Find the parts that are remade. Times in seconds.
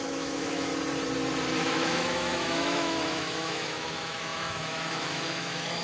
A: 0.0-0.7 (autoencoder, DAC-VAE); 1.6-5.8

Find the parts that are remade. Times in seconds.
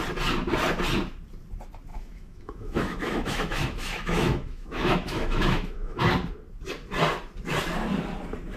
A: 1.9-6.0 (autoencoder, DAC-VAE)